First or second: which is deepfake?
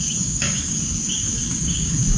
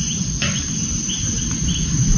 first